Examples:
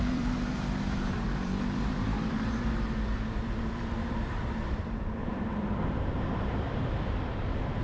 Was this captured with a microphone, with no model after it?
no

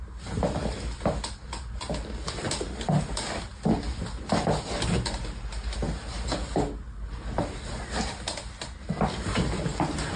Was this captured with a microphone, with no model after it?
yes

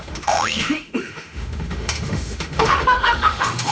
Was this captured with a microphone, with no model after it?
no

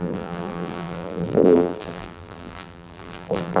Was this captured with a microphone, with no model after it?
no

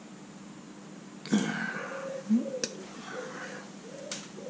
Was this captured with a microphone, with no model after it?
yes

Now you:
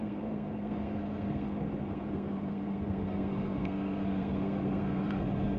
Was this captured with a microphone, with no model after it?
no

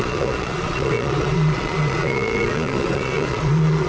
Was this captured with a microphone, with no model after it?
no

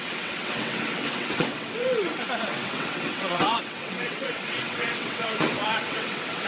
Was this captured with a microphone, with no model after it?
no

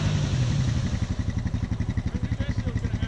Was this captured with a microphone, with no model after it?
yes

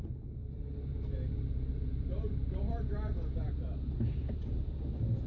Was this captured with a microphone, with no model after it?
yes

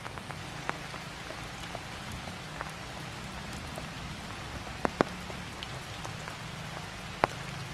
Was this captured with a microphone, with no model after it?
yes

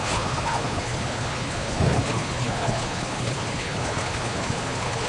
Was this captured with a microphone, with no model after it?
no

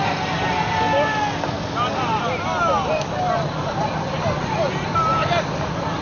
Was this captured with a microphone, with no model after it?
yes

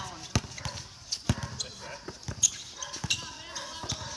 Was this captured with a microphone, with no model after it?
yes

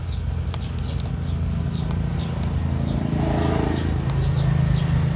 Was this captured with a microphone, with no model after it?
yes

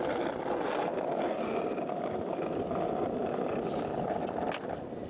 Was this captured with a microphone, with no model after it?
yes